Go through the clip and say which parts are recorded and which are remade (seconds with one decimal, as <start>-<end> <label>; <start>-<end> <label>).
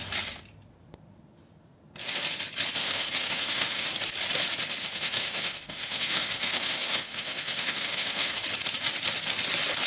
0.0-2.8 recorded; 2.8-3.9 remade; 3.9-4.8 recorded; 4.8-8.4 remade; 8.4-9.9 recorded